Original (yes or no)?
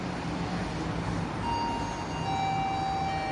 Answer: yes